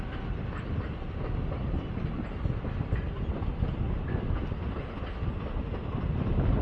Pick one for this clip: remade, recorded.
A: recorded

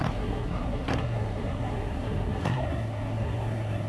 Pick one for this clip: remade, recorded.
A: remade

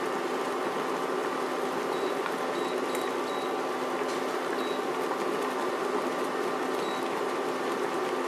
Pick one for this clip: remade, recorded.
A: recorded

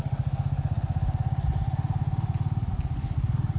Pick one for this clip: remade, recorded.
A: recorded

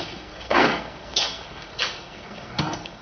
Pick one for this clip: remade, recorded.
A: remade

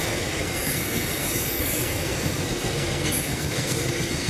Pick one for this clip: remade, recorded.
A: remade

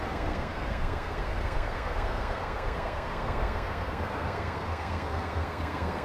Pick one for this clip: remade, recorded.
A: remade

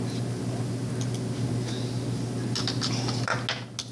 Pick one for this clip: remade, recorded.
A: recorded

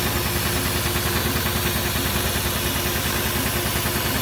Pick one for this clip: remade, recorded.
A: recorded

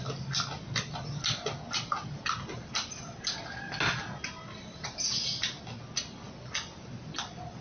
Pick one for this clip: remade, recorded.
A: recorded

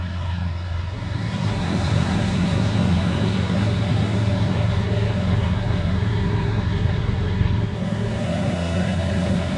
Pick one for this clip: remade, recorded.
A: remade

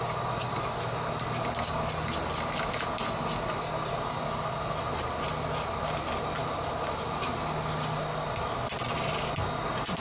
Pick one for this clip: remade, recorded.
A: recorded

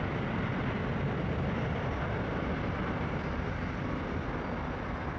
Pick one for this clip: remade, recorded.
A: recorded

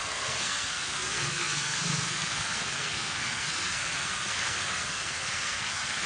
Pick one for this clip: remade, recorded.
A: remade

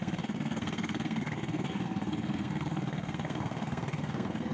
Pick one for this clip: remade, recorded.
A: remade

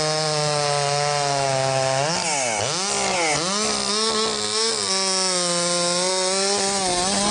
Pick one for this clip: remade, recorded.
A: recorded